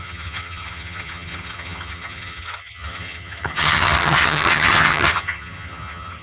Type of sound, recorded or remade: remade